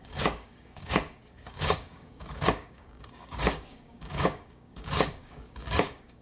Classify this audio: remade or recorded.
remade